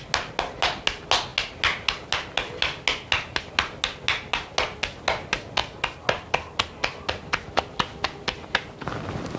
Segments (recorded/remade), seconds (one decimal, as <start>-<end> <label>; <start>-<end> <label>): 0.0-9.4 recorded